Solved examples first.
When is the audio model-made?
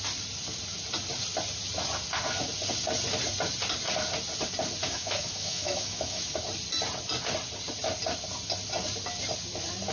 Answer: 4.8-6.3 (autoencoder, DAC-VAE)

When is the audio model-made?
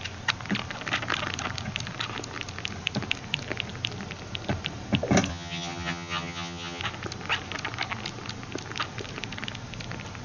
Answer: 5.3-6.8 (vocoder, HiFi-GAN)